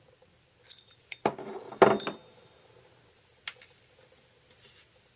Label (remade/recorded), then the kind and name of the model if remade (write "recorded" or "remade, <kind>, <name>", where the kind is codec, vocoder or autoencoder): recorded